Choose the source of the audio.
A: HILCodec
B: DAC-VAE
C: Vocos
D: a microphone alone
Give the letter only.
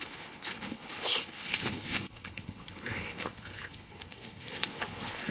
A